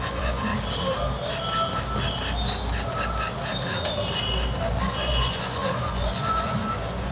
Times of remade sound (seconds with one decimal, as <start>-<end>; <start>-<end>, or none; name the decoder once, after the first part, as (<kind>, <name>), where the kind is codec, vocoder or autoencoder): 0.0-0.5 (vocoder, Vocos); 4.8-7.1